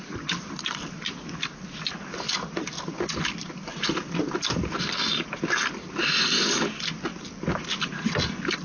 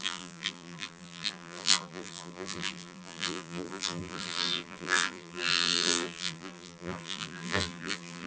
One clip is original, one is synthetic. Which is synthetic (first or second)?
second